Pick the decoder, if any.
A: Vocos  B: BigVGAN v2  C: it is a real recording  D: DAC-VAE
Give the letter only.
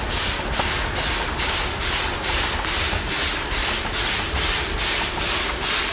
C